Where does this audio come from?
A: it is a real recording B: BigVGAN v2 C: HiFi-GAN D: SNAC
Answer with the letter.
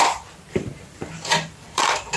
B